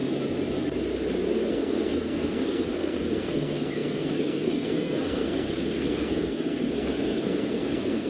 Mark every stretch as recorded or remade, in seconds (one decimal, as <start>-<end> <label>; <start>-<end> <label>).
0.0-1.5 recorded; 1.5-8.1 remade